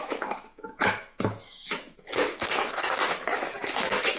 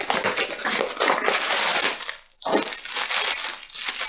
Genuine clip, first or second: second